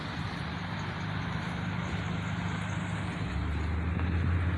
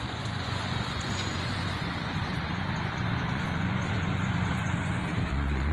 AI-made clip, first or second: second